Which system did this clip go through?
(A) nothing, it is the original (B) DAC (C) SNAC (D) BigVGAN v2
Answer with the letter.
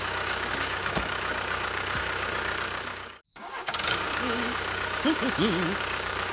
B